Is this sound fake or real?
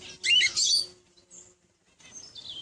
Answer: real